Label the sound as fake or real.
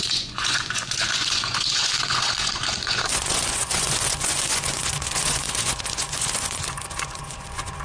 fake